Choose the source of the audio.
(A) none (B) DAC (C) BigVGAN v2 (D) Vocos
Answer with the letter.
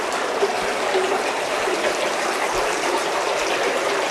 C